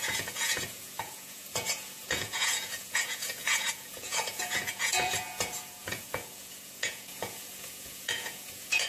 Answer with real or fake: fake